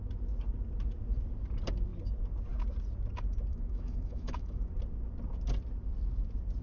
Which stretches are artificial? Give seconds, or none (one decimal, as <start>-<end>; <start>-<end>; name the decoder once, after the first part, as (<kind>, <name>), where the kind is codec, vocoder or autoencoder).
3.5-4.7 (autoencoder, DAC-VAE)